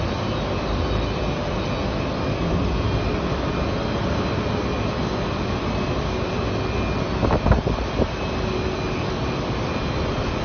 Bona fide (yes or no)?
yes